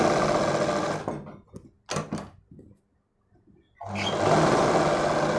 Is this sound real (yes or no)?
yes